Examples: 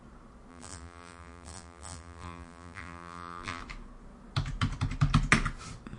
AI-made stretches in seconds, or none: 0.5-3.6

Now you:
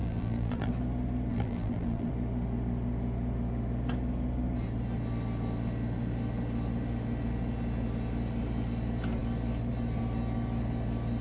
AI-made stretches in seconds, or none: 0.0-0.7; 1.3-2.1

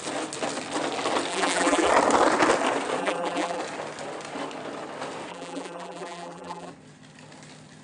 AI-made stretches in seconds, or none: 1.3-1.9; 3.0-3.6; 5.3-6.7

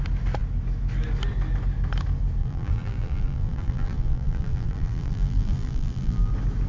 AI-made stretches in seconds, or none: 2.4-6.3

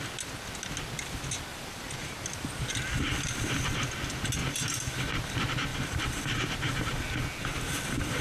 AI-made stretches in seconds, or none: 1.5-2.5; 5.7-6.9

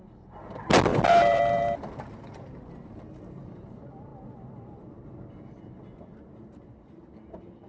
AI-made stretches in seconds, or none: 0.9-1.9

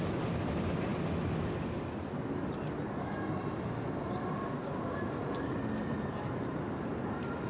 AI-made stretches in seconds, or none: 0.0-0.9; 5.4-7.5

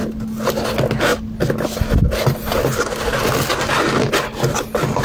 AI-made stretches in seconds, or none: none